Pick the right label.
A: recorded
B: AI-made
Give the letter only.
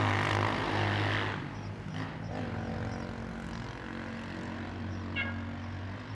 A